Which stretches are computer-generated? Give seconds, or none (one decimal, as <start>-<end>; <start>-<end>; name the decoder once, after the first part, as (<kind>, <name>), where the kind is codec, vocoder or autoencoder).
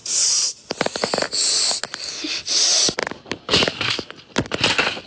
none